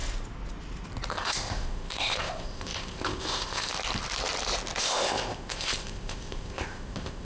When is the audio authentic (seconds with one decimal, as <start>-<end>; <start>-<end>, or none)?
0.0-1.1; 3.7-4.8